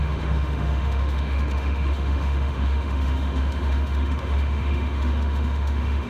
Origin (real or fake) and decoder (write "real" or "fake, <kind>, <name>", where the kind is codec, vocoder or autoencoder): fake, autoencoder, DAC-VAE